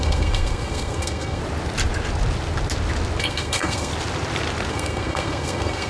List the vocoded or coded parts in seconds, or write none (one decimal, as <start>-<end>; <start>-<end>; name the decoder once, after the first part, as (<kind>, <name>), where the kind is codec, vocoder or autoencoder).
0.0-1.4 (codec, SNAC); 3.2-3.9; 4.7-5.9